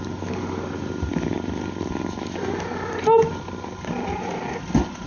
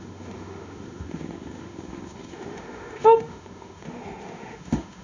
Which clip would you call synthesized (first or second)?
second